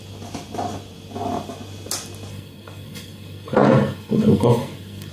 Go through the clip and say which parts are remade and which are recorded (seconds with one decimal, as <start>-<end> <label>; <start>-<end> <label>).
0.0-2.3 recorded; 2.3-5.1 remade